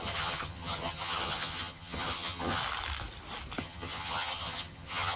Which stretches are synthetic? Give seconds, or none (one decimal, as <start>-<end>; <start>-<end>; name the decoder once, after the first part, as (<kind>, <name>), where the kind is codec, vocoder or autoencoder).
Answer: 0.0-2.6 (vocoder, HiFi-GAN); 3.6-5.2